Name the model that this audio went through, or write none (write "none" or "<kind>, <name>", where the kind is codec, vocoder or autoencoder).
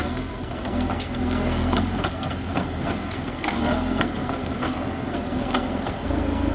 codec, SNAC